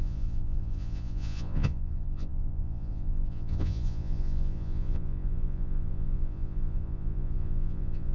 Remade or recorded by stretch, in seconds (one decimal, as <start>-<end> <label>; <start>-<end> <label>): 0.0-8.1 remade